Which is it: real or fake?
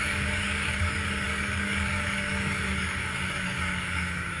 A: fake